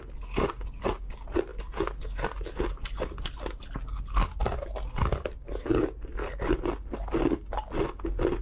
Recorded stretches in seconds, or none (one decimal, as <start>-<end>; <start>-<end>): 0.0-8.4